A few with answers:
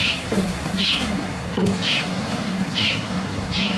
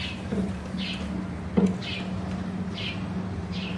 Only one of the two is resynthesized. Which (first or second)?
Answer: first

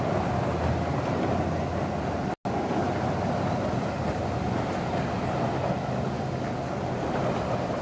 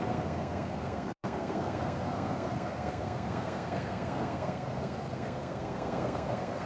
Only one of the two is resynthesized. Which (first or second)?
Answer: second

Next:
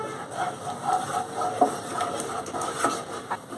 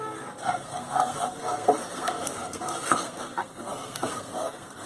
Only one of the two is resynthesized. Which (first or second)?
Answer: second